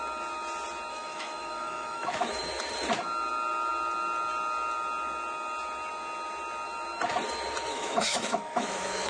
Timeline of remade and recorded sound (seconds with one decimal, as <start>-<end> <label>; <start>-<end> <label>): 0.0-0.9 recorded; 0.9-2.4 remade; 2.4-7.7 recorded; 7.7-9.1 remade